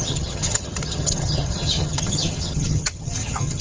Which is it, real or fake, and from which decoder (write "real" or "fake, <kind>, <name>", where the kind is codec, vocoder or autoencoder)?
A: fake, vocoder, HiFi-GAN